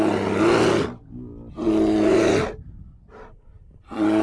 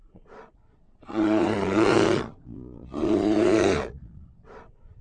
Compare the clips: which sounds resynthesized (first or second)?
second